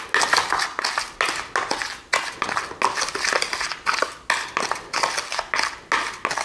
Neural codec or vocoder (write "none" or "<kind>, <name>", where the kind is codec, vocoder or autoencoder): none